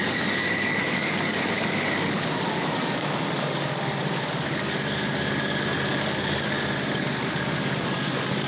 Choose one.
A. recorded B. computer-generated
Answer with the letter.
B